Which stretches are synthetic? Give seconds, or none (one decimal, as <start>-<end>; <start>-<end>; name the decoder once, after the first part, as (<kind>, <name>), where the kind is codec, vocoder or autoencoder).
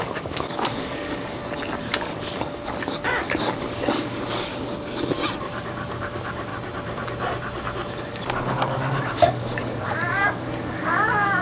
0.0-1.4 (codec, DAC); 2.0-4.5; 5.4-6.5; 8.1-11.4